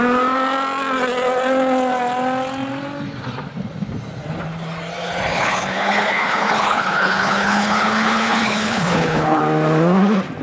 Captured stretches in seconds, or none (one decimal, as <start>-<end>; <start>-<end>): 0.0-5.3; 9.4-10.4